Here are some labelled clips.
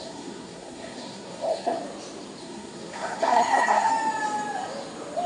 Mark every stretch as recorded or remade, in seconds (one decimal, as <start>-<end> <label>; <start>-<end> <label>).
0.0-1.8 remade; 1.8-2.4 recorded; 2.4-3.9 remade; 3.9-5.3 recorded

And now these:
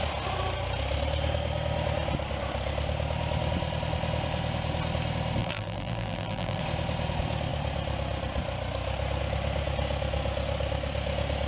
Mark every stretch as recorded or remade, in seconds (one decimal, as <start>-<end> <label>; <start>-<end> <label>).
0.0-5.4 recorded; 5.4-6.6 remade; 6.6-11.5 recorded

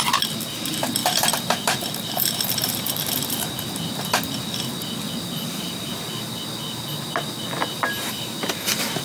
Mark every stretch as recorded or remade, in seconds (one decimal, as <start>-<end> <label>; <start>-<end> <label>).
0.0-1.0 recorded; 1.0-3.5 remade; 3.5-9.0 recorded

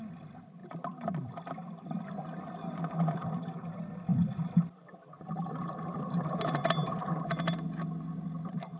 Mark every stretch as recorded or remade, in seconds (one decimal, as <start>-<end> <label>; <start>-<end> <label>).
0.0-0.6 recorded; 0.6-1.3 remade; 1.3-8.8 recorded

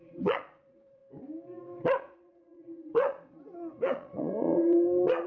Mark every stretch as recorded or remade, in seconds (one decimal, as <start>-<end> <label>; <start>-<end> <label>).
0.0-1.0 remade; 1.0-1.6 recorded; 1.6-5.3 remade

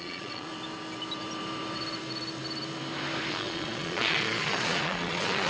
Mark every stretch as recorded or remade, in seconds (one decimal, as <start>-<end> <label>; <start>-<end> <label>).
0.0-0.5 remade; 0.5-3.3 recorded; 3.3-5.5 remade

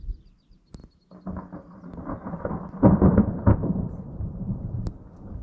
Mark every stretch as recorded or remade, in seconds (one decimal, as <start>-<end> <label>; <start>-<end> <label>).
0.0-3.6 recorded; 3.6-4.6 remade; 4.6-5.4 recorded